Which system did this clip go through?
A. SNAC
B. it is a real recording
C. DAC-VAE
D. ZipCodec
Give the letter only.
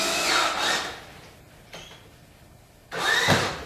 B